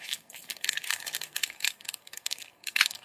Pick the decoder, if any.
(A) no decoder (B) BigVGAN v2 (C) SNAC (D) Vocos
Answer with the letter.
C